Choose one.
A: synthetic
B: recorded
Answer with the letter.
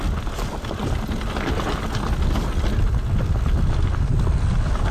B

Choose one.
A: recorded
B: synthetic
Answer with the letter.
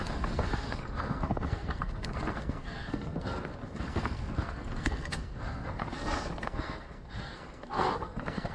B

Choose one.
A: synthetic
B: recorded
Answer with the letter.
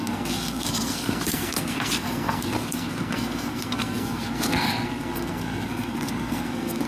A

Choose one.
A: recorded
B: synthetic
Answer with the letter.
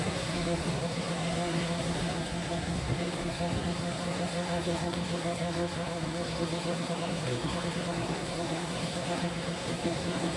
B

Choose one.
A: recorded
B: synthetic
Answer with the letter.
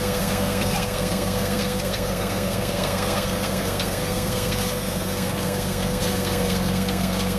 B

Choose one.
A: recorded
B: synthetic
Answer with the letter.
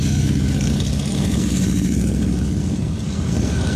B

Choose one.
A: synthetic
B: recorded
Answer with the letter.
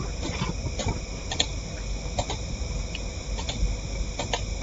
B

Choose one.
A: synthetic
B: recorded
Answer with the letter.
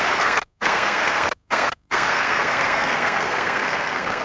A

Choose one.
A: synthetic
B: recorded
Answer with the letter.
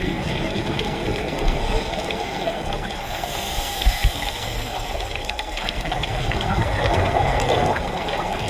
A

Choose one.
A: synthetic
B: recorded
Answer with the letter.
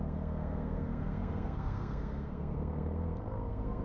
A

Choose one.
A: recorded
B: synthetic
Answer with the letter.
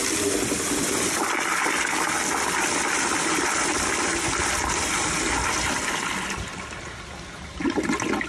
A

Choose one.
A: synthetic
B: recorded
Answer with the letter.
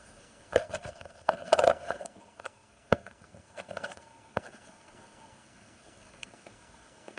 A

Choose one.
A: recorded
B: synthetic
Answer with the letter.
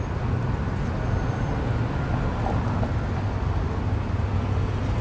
A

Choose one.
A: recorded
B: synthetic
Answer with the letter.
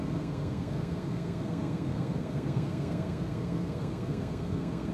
B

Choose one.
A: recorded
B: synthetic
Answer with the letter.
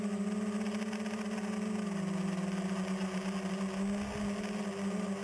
A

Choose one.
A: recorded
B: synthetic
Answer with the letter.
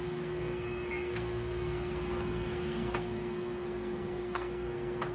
B